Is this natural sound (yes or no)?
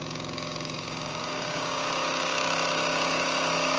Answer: no